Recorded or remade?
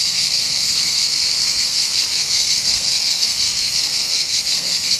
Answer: remade